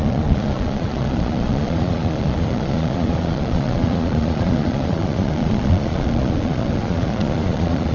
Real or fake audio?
fake